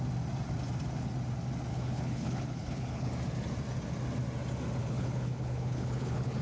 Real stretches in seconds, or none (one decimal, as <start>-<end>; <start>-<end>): 0.0-1.7; 3.1-4.8